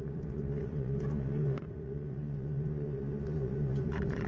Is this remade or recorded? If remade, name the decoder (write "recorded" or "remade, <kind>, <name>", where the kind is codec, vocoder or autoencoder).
remade, vocoder, Vocos